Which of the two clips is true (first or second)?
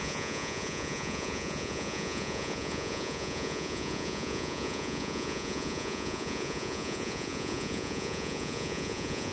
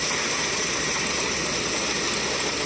second